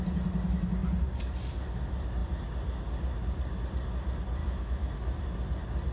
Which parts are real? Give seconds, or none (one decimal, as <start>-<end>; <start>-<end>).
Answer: 0.0-4.4; 5.2-5.9